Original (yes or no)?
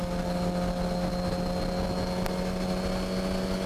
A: yes